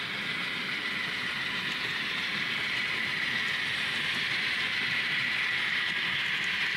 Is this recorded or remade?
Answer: remade